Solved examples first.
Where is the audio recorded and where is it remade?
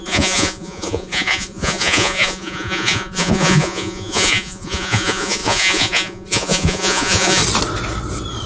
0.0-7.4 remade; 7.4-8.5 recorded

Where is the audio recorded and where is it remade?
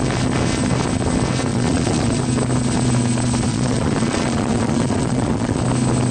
0.0-1.5 recorded; 1.5-2.2 remade; 2.2-3.5 recorded; 3.5-5.6 remade; 5.6-6.1 recorded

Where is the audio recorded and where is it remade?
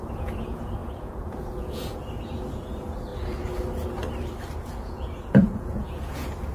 0.0-3.1 remade; 3.1-4.6 recorded; 4.6-6.5 remade